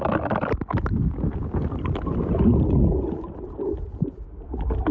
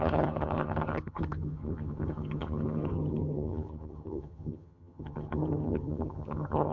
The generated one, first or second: second